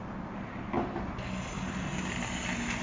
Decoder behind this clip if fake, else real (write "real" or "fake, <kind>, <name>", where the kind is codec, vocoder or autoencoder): real